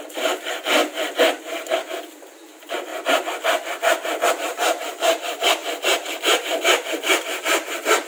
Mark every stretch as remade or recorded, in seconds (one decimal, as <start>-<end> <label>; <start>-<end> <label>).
0.0-0.8 remade; 0.8-1.4 recorded; 1.4-2.9 remade; 2.9-4.3 recorded; 4.3-8.1 remade